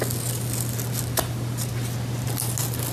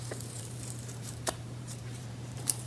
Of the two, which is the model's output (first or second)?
second